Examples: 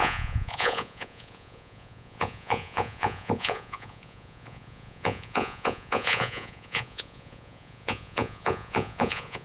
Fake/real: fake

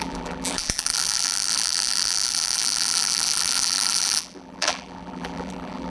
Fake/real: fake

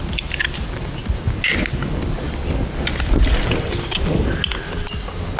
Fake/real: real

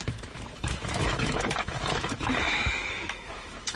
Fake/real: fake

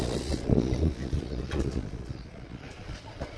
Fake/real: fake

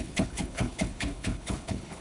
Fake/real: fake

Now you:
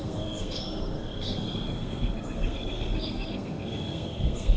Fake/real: fake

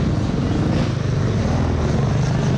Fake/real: real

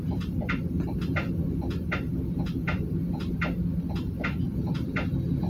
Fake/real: fake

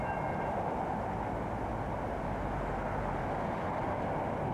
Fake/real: real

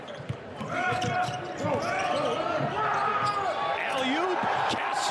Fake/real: real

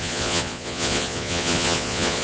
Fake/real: fake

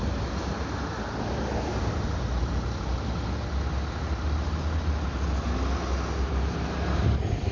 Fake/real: real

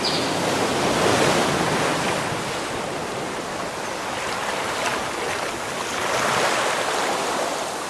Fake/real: real